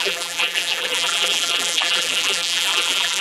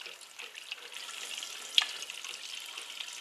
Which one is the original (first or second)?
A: second